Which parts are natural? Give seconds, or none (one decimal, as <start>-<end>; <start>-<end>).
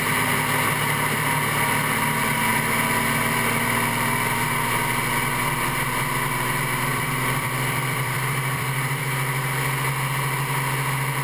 0.0-6.9; 9.0-11.2